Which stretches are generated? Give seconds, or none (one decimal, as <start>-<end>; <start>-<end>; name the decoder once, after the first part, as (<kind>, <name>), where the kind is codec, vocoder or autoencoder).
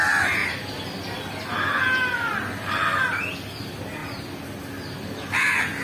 none